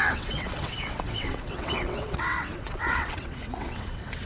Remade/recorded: remade